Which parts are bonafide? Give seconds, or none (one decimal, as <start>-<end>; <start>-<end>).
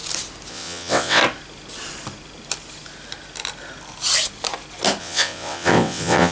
0.0-0.5; 1.2-5.0